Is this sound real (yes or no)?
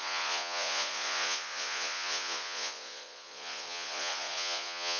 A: no